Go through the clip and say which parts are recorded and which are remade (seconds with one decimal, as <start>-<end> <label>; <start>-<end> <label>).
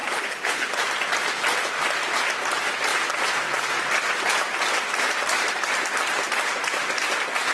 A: 0.0-0.7 remade; 0.7-7.5 recorded